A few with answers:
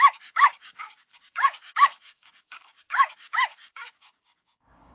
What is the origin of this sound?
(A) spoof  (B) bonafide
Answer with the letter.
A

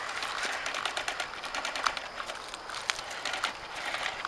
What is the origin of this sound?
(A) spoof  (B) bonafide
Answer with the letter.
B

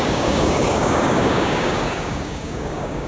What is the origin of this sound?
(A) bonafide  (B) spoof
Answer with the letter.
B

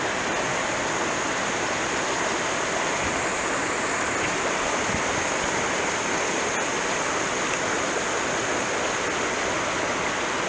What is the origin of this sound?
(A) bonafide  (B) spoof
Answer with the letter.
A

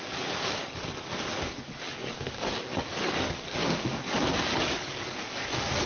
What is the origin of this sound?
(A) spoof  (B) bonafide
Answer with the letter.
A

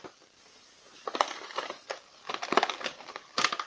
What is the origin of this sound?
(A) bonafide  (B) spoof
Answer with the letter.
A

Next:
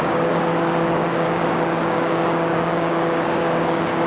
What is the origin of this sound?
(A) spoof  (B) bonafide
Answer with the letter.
A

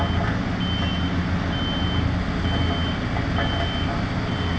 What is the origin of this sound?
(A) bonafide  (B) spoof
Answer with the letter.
A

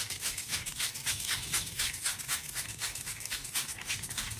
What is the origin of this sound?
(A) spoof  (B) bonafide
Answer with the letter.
A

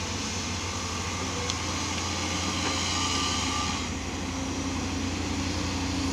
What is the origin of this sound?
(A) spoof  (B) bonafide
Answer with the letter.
B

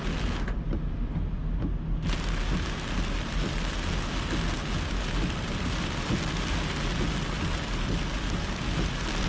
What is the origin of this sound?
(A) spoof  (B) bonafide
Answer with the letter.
B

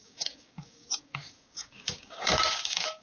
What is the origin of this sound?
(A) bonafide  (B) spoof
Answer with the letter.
B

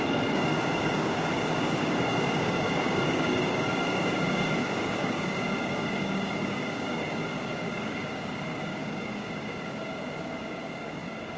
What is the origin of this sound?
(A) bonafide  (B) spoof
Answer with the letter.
B